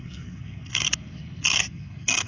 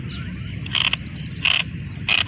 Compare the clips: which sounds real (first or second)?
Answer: second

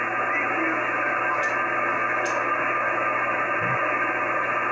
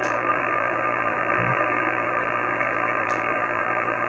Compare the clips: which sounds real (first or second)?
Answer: first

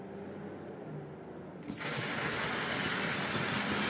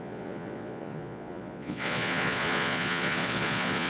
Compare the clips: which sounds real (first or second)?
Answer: first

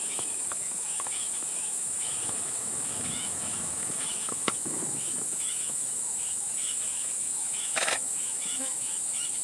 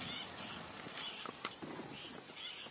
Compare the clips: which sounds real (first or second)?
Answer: second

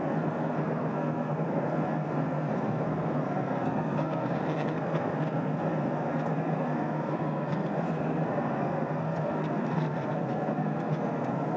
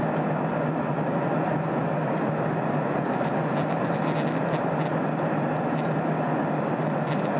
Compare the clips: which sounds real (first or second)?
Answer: second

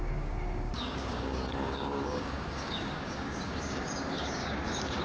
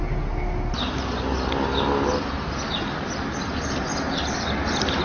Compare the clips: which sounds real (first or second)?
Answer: second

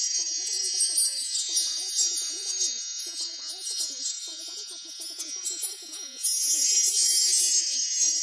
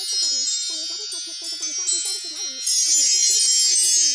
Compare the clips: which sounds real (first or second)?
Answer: second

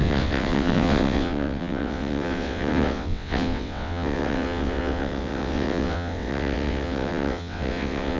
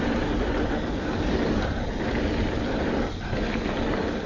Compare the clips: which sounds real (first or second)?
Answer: second